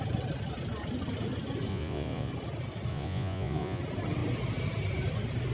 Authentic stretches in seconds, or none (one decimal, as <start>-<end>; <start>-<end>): 0.0-1.7; 2.3-2.9; 3.8-5.5